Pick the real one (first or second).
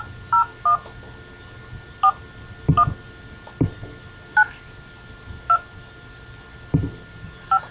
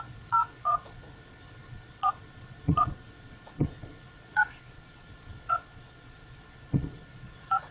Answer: first